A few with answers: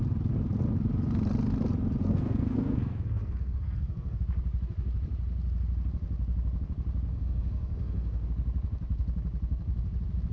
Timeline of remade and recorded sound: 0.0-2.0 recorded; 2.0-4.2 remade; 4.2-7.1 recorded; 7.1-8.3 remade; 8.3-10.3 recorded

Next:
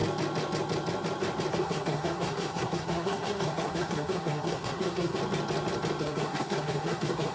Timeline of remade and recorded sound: 0.0-1.5 recorded; 1.5-5.2 remade; 5.2-6.0 recorded; 6.0-7.3 remade

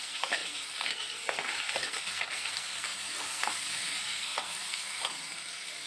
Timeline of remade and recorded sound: 0.0-5.9 remade

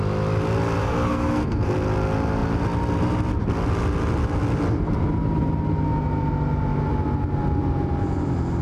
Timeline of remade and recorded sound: 0.0-0.8 recorded; 0.8-1.7 remade; 1.7-8.6 recorded

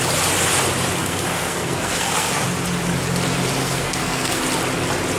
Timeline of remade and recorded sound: 0.0-1.0 recorded; 1.0-2.4 remade; 2.4-3.6 recorded; 3.6-4.4 remade; 4.4-5.2 recorded

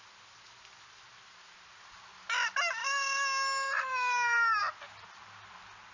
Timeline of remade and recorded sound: 0.0-5.9 recorded

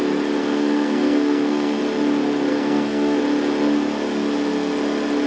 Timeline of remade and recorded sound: 0.0-0.4 recorded; 0.4-1.8 remade; 1.8-2.5 recorded; 2.5-3.2 remade; 3.2-5.3 recorded